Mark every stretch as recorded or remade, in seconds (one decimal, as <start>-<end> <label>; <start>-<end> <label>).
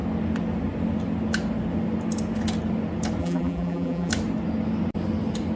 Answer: 0.0-3.2 recorded; 3.2-4.1 remade; 4.1-5.6 recorded